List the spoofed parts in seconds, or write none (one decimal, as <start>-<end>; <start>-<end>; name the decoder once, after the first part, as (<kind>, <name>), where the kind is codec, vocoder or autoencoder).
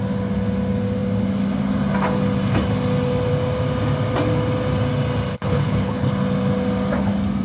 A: 5.3-6.1 (codec, HILCodec)